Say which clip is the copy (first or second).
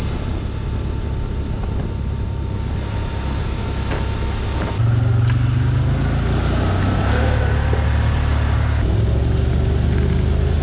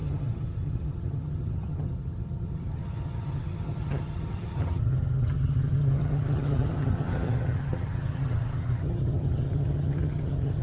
second